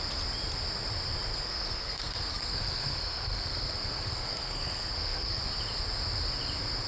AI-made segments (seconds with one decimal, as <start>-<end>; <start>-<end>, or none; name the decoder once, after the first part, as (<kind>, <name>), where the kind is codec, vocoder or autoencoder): 1.3-5.4 (codec, SNAC)

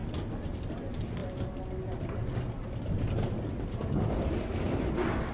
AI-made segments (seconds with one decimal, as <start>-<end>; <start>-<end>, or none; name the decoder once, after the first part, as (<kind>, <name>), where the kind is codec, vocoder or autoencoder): none